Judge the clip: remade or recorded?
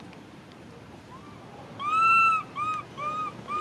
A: recorded